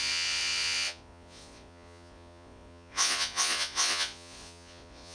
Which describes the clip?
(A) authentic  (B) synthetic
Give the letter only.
B